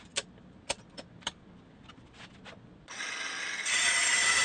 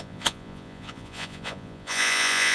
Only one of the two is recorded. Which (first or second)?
first